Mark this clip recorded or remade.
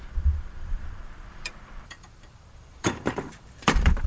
remade